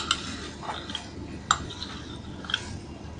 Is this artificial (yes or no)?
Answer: no